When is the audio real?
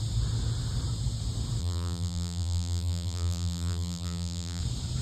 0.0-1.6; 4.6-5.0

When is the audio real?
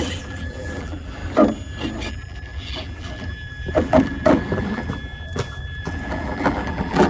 1.2-2.1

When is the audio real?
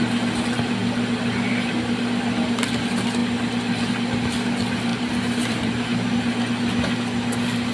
0.0-4.9; 6.1-7.7